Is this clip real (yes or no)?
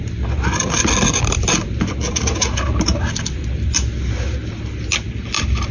yes